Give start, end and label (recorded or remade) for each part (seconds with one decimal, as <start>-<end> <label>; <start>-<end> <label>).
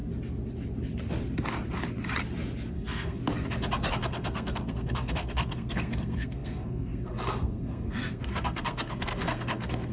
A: 0.0-2.7 recorded; 2.7-3.2 remade; 3.2-3.9 recorded; 3.9-9.9 remade